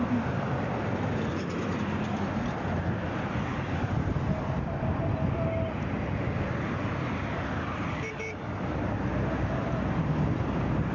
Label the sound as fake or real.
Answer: real